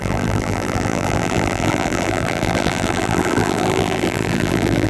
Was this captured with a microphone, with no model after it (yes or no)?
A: no